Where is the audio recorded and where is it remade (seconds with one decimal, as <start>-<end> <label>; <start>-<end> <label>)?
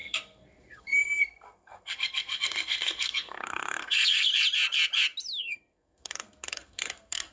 0.0-4.3 remade; 4.3-5.4 recorded; 5.4-7.3 remade